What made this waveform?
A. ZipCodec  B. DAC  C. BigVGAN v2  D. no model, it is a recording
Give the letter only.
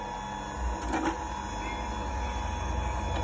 D